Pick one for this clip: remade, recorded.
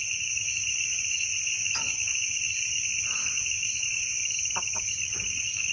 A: recorded